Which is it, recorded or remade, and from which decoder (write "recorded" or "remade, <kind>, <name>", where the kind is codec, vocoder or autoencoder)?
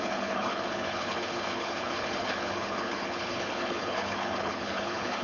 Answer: remade, codec, HILCodec